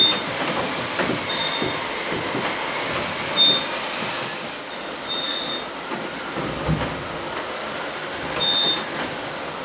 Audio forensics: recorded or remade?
recorded